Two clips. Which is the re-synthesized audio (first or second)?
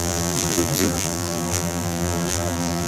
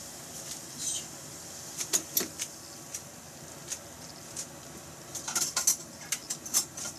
first